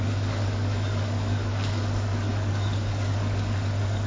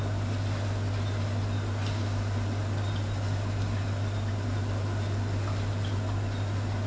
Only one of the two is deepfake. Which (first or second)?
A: first